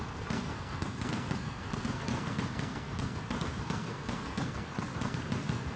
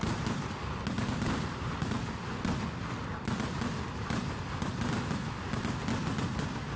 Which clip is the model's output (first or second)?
first